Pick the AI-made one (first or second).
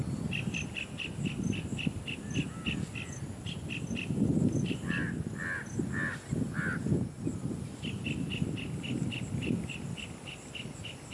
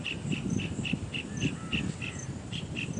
second